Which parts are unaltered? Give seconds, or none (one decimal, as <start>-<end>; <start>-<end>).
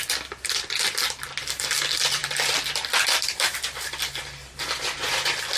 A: 0.0-2.2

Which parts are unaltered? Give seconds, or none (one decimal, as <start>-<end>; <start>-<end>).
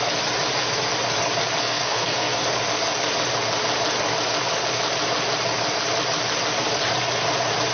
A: 0.0-1.6; 2.4-7.7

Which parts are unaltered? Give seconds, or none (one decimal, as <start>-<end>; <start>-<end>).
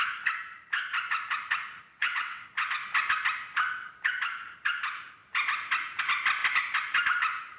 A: 0.0-1.9; 2.4-7.6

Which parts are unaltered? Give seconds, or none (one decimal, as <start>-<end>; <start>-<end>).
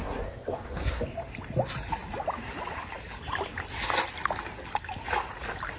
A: 1.0-5.8